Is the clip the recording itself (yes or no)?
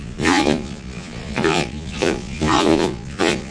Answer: no